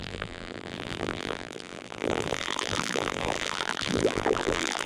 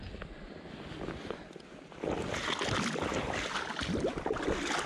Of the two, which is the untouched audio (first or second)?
second